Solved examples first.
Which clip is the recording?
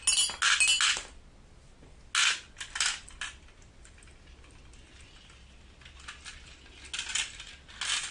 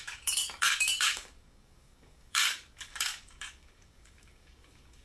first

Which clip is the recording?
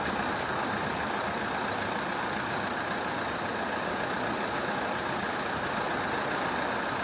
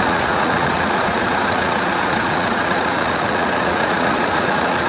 first